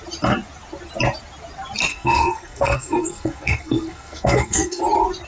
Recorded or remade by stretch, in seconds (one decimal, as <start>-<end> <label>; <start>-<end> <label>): 0.0-1.9 recorded; 1.9-4.8 remade; 4.8-5.3 recorded